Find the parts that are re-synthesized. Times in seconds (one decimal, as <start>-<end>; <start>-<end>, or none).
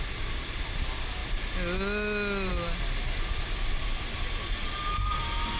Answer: none